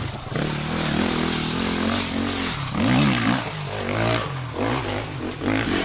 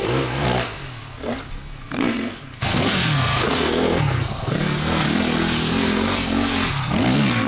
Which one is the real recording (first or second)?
first